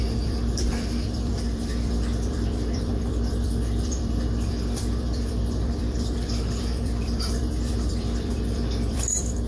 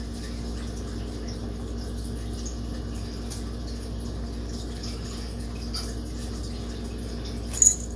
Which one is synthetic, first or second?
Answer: first